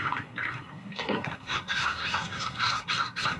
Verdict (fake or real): fake